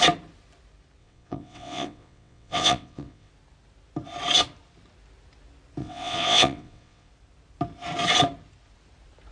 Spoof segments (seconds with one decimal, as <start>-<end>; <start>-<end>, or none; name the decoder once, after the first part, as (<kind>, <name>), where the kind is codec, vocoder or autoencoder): 1.0-3.3 (vocoder, WaveNeXt); 5.8-7.1